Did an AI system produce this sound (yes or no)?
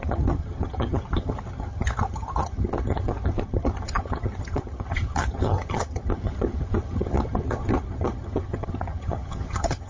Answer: yes